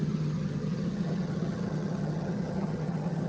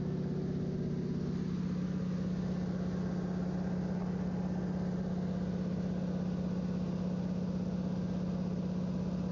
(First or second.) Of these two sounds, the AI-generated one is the first